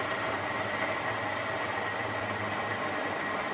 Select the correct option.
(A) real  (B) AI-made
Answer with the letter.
A